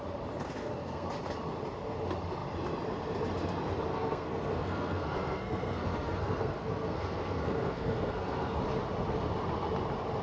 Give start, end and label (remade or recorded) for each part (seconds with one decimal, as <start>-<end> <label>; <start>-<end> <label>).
0.0-0.4 recorded; 0.4-1.1 remade; 1.1-3.9 recorded; 3.9-8.6 remade; 8.6-10.2 recorded

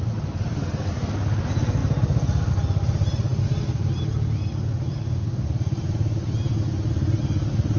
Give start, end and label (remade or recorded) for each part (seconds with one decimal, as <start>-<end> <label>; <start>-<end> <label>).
0.0-7.8 recorded